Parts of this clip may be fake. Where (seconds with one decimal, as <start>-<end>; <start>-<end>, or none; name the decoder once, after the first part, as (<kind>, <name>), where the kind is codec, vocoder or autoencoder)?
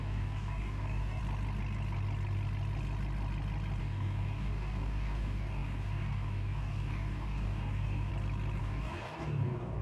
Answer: 0.0-1.2 (codec, DAC); 3.8-8.1; 8.6-9.8